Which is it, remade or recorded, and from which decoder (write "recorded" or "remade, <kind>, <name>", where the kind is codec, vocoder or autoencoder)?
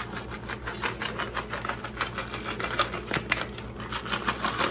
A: recorded